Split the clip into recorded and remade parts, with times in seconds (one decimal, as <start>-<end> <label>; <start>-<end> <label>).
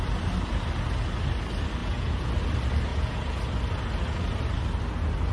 0.0-1.8 recorded; 1.8-2.3 remade; 2.3-2.9 recorded; 2.9-3.4 remade; 3.4-5.3 recorded